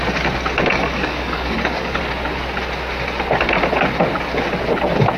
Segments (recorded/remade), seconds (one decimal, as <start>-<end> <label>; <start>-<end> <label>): 0.0-0.7 recorded; 0.7-2.0 remade; 2.0-5.2 recorded